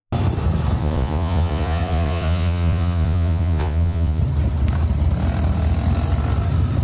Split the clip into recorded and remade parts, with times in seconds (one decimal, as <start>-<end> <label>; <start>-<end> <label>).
0.0-0.8 recorded; 0.8-4.2 remade; 4.2-6.8 recorded